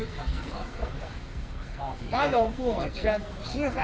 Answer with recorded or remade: remade